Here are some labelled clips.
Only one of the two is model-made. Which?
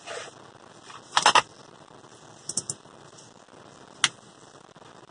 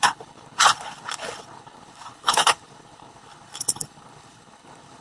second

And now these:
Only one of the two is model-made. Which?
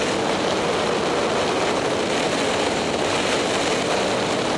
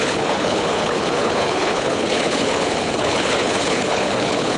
second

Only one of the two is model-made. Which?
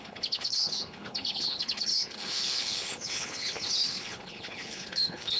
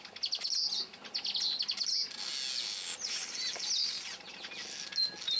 first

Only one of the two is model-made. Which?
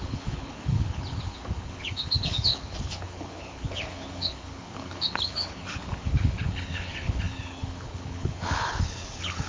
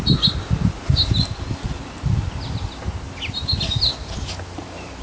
first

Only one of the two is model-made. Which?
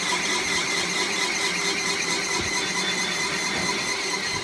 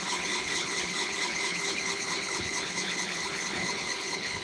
second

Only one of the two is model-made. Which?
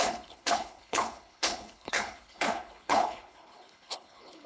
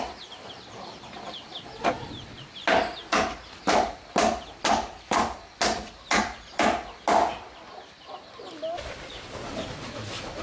first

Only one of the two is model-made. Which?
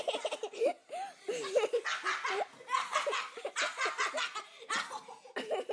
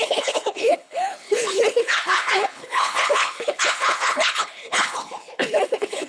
second